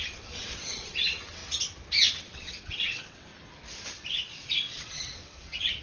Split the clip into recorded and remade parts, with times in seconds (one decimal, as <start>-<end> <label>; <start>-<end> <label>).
0.0-1.4 remade; 1.4-2.1 recorded; 2.1-3.3 remade; 3.3-4.1 recorded; 4.1-5.8 remade